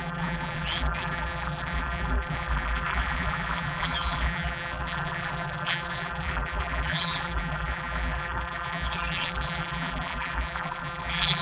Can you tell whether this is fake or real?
fake